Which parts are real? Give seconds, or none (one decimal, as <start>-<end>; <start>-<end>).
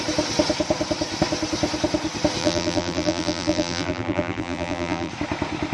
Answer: 0.0-2.4; 5.1-5.7